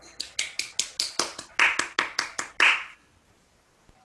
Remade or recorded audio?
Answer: recorded